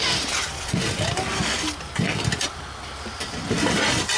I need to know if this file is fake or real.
real